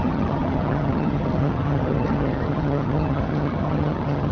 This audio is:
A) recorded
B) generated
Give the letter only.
B